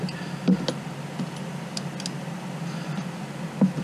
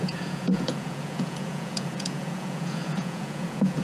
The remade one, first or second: second